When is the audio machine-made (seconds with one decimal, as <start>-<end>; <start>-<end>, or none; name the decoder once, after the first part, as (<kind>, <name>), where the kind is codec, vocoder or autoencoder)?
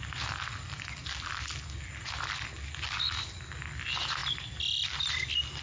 none